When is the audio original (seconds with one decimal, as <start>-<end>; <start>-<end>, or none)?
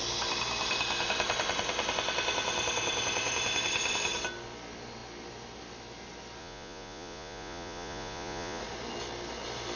0.0-6.4; 8.6-9.8